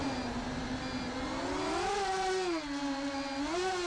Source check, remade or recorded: recorded